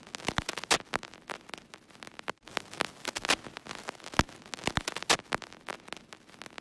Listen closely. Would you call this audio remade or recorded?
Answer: recorded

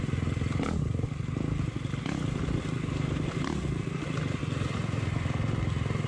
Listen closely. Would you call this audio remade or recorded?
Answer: recorded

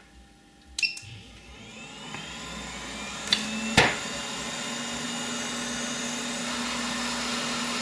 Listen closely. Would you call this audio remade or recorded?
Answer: recorded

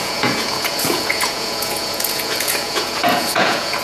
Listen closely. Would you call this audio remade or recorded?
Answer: remade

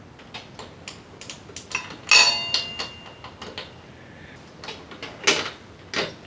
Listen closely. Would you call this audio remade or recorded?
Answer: recorded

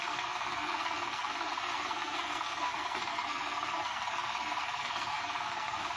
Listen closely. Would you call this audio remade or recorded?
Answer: remade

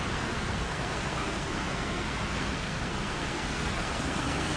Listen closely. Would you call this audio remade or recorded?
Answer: remade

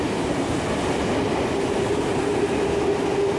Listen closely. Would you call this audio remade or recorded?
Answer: recorded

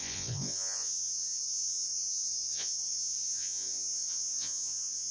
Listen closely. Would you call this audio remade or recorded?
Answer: remade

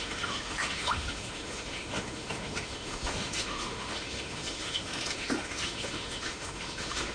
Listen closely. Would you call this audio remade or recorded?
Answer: remade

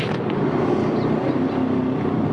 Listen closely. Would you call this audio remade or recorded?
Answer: recorded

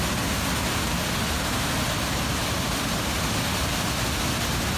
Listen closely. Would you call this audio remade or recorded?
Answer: recorded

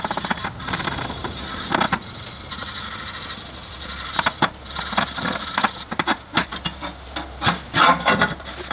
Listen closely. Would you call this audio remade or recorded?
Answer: recorded